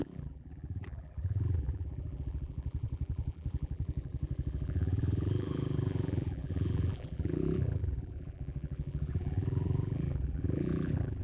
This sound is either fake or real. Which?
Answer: fake